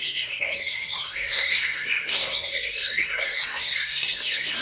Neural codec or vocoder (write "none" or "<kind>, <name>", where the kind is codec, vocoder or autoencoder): codec, SNAC